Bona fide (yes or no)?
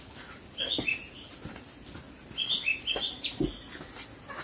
yes